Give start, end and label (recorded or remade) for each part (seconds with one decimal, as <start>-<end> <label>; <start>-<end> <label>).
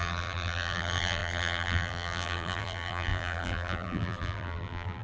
0.0-5.0 remade